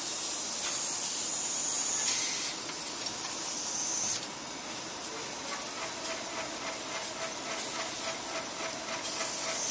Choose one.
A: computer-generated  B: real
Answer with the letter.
B